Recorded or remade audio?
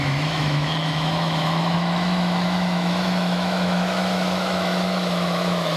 remade